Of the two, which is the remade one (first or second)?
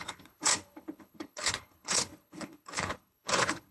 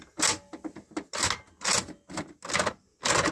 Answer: first